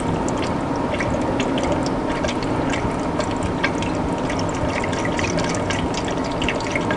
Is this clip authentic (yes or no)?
yes